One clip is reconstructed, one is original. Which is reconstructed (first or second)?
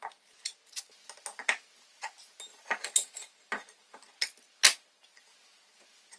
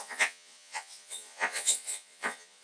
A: second